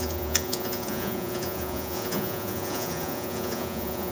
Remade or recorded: remade